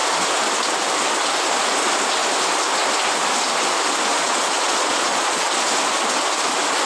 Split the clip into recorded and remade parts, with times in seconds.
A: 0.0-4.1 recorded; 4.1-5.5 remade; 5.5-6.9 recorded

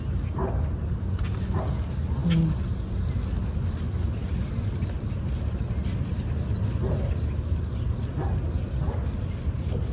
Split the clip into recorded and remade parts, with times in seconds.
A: 0.0-9.9 recorded

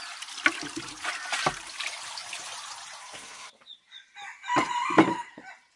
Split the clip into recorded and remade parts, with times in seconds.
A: 0.0-3.0 recorded; 3.0-3.5 remade; 3.5-5.8 recorded

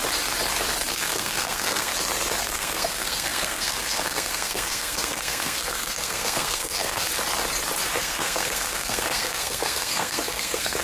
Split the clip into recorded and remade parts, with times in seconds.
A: 0.0-0.9 recorded; 0.9-1.9 remade; 1.9-2.4 recorded; 2.4-7.1 remade; 7.1-8.0 recorded; 8.0-10.8 remade

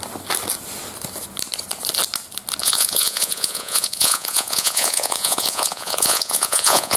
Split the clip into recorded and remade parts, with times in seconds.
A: 0.0-2.6 recorded; 2.6-7.0 remade

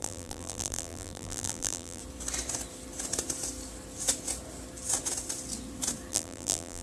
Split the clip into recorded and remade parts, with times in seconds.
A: 0.0-2.0 remade; 2.0-6.1 recorded; 6.1-6.8 remade